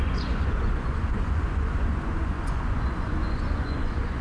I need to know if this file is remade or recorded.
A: remade